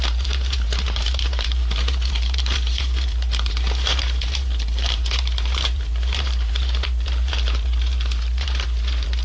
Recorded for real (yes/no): no